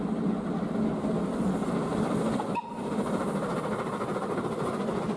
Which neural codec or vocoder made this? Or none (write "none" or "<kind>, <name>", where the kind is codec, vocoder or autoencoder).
none